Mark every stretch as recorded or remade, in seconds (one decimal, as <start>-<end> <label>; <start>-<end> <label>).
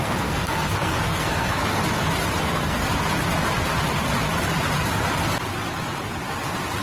0.0-1.8 remade; 1.8-2.4 recorded; 2.4-2.8 remade; 2.8-6.8 recorded